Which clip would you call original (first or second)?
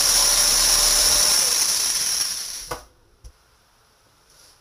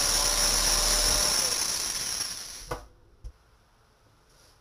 second